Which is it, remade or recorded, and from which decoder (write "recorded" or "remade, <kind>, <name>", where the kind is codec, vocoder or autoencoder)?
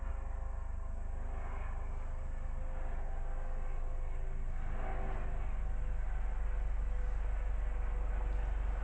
recorded